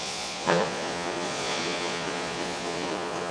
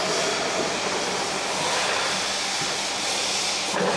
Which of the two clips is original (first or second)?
second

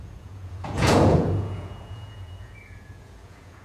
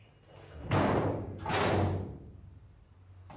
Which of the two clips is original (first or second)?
second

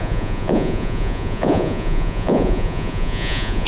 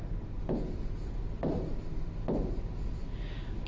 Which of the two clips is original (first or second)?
second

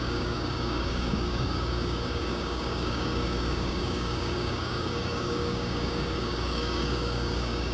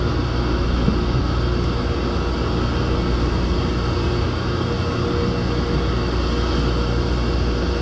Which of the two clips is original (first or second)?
second